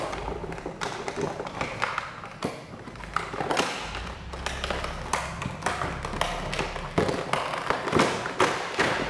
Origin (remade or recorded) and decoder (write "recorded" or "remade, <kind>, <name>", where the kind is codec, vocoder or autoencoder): recorded